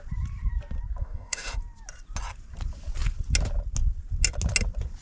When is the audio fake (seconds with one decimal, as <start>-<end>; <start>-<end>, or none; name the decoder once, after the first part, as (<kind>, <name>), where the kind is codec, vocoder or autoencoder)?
1.0-1.6 (autoencoder, DAC-VAE)